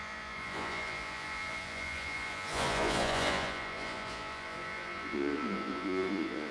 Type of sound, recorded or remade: remade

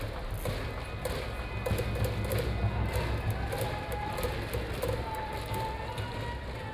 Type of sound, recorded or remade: recorded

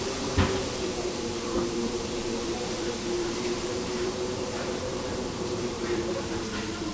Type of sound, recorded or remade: remade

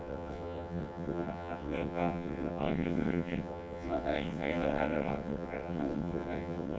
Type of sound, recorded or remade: remade